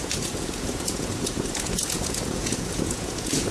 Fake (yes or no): yes